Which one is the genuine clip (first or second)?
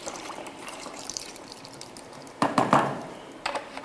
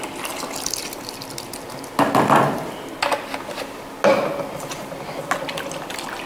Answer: second